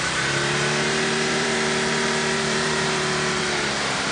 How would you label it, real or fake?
fake